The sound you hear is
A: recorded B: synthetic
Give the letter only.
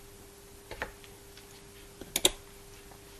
A